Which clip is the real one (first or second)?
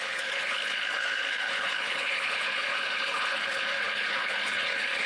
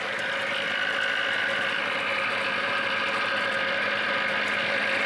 second